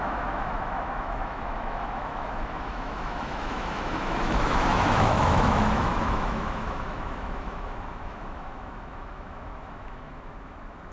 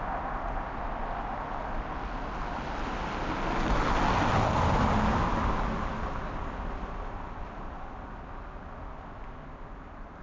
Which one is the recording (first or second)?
second